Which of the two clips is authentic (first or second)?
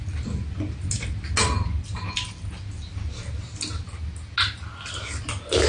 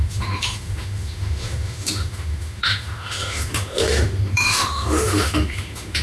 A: first